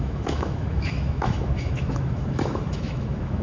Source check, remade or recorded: remade